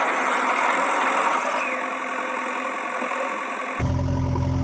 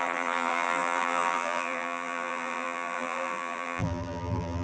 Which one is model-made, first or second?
second